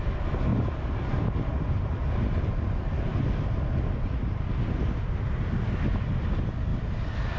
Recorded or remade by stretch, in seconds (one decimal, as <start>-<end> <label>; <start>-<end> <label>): 0.0-7.4 recorded